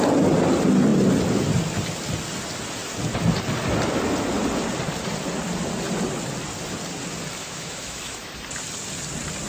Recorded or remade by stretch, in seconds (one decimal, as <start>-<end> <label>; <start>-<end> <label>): 0.0-7.4 recorded; 7.4-8.3 remade; 8.3-9.5 recorded

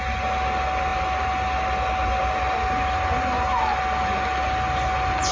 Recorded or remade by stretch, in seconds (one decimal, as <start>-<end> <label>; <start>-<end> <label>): 0.0-5.3 recorded

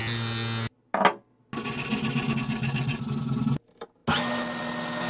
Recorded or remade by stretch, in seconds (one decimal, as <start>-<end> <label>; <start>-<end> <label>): 0.0-5.1 recorded

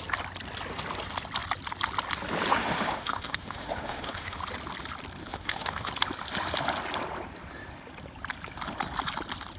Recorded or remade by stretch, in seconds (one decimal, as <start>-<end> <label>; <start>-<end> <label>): 0.0-2.6 recorded; 2.6-4.4 remade; 4.4-5.2 recorded; 5.2-5.9 remade; 5.9-9.6 recorded

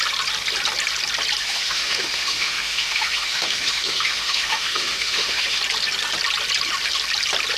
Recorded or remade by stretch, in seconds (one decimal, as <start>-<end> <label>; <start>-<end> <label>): 0.0-1.4 recorded; 1.4-5.6 remade; 5.6-7.6 recorded

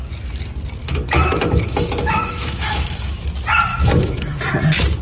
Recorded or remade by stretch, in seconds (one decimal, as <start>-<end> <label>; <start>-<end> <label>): 0.0-0.8 recorded; 0.8-3.2 remade; 3.2-3.7 recorded; 3.7-4.4 remade; 4.4-5.0 recorded